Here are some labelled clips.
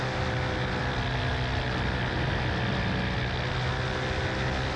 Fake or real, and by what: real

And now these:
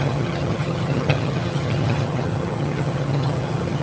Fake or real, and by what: fake, vocoder, HiFi-GAN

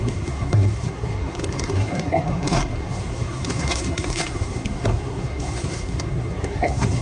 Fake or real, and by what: fake, codec, SNAC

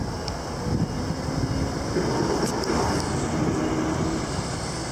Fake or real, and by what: real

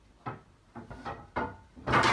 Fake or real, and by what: real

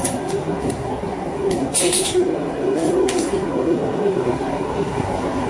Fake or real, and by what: fake, codec, SNAC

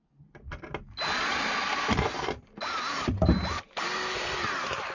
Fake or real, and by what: real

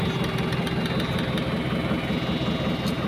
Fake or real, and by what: real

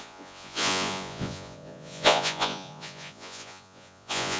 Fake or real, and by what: fake, vocoder, Vocos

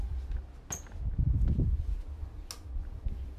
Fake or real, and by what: real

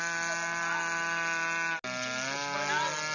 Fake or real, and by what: real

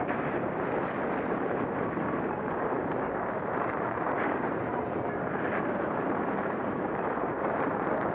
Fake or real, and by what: fake, vocoder, BigVGAN v2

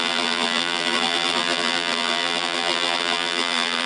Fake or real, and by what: fake, vocoder, BigVGAN v2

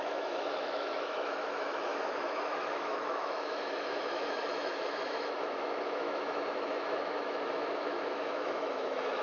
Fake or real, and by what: fake, autoencoder, DAC-VAE